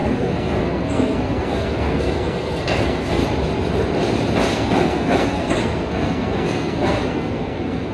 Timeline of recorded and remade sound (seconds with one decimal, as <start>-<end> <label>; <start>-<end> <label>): 0.0-3.2 remade; 3.2-4.5 recorded; 4.5-7.9 remade